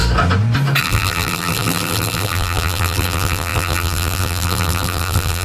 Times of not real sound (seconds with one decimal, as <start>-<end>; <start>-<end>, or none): 0.8-5.4